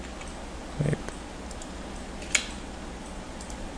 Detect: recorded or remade recorded